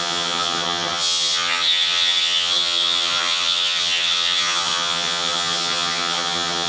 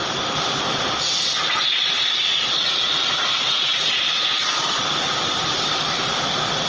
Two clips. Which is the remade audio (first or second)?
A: first